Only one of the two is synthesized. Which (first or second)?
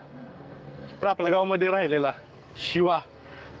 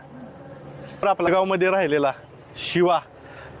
first